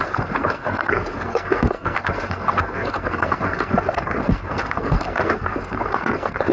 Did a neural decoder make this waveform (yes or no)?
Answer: yes